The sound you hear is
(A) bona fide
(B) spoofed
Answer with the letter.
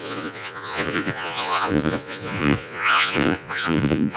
B